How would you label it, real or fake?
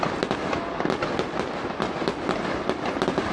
real